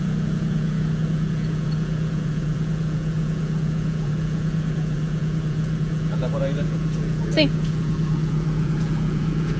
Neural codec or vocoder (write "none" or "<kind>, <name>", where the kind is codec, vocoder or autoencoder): vocoder, Vocos